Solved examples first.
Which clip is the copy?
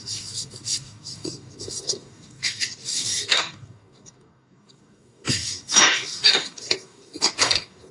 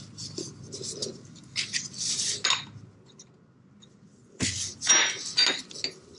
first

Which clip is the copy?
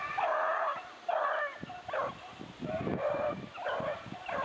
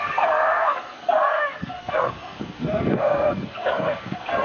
second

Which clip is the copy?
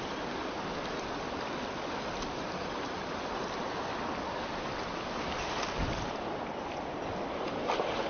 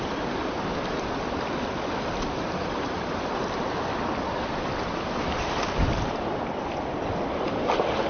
second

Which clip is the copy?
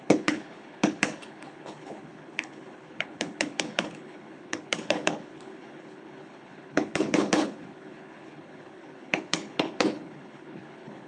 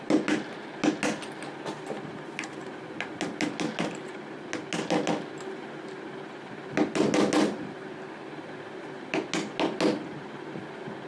first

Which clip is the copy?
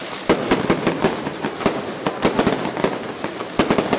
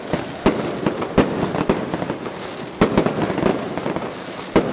first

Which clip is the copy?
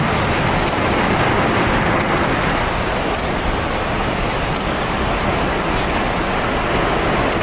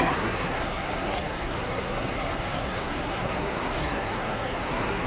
second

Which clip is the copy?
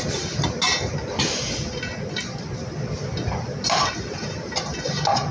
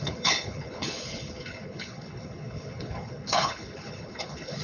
second